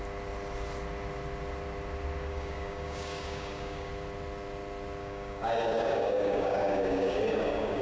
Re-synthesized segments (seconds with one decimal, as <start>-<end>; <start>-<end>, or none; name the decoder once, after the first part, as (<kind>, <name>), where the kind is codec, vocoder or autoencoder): 2.2-3.9 (codec, DAC); 5.0-7.8